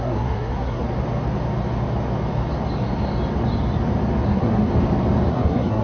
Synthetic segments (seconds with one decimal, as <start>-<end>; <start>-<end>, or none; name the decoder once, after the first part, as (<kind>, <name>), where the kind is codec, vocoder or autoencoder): 0.0-0.8 (codec, SNAC); 4.3-4.7; 5.3-5.8